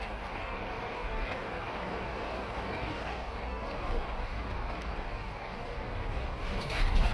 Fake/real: fake